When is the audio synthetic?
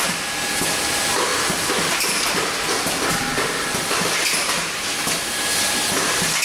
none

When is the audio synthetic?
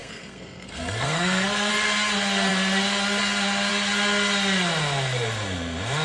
0.0-1.7